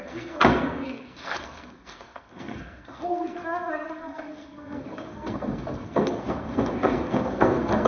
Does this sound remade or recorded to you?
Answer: remade